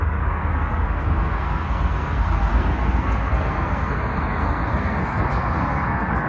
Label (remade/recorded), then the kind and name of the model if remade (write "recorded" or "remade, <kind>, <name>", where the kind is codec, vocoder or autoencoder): remade, codec, SNAC